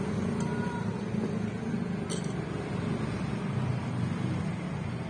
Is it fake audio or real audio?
real